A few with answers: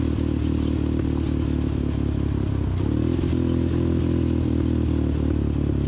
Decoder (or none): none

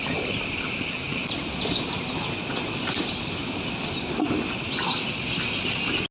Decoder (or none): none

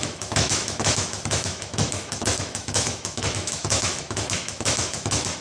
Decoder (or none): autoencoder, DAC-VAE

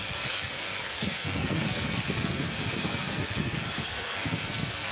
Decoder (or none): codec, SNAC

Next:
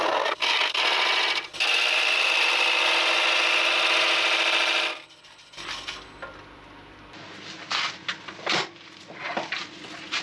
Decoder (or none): none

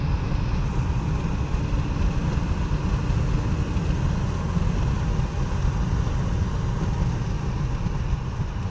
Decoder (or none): none